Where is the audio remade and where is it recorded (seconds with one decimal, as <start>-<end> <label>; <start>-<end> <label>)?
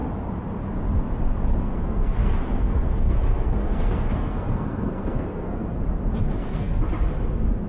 0.0-1.6 recorded; 1.6-5.8 remade; 5.8-6.3 recorded; 6.3-6.8 remade; 6.8-7.7 recorded